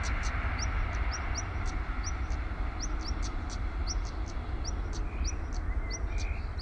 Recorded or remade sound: recorded